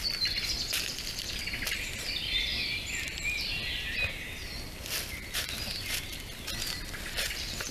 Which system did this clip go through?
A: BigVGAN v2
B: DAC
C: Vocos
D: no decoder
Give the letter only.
A